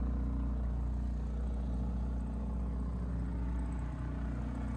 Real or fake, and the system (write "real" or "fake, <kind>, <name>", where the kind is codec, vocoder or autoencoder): real